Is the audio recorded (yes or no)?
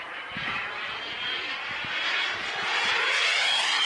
yes